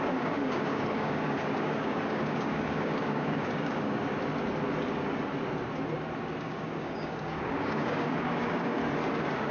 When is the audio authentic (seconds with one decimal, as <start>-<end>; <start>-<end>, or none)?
4.0-6.4; 8.8-9.5